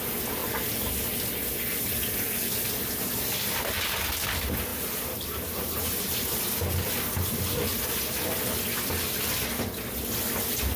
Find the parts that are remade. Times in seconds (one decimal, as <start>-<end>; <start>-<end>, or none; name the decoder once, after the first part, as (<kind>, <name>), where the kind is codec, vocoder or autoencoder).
4.7-6.9 (vocoder, BigVGAN v2)